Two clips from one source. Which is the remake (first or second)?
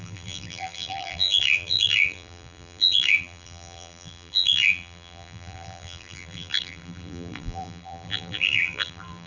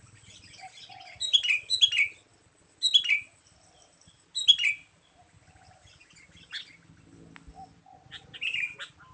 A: first